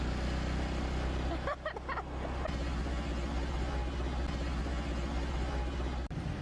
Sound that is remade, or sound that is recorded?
recorded